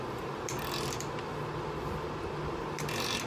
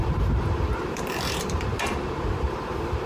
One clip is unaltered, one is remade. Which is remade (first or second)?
second